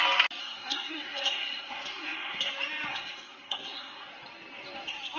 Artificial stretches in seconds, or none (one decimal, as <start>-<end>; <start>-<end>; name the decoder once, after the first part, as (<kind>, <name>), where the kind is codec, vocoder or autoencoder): 0.4-2.5 (codec, SNAC); 2.9-4.1